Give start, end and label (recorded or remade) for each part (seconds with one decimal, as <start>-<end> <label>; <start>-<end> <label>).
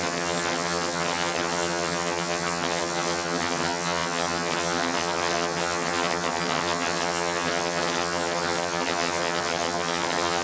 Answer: 0.0-10.4 remade